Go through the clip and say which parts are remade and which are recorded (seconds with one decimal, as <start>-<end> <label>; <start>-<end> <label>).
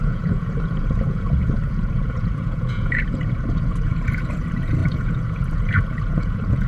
0.0-6.7 remade